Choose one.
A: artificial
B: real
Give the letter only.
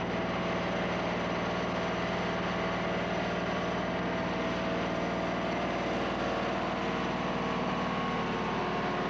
B